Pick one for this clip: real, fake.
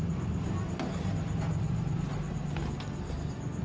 real